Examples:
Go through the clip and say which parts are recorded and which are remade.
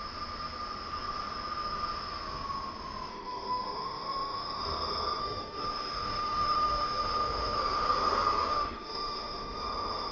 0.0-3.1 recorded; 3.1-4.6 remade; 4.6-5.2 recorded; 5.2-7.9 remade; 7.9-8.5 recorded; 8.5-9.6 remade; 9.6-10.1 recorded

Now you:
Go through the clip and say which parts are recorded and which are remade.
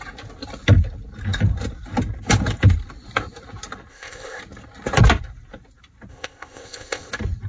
0.0-3.9 recorded; 3.9-4.4 remade; 4.4-6.1 recorded; 6.1-7.1 remade; 7.1-7.5 recorded